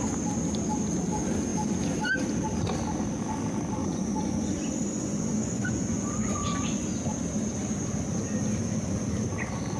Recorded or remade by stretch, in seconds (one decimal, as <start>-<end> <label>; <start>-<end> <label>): 0.0-3.8 recorded; 3.8-6.9 remade; 6.9-9.8 recorded